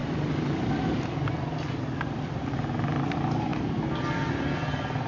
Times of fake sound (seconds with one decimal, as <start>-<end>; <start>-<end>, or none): none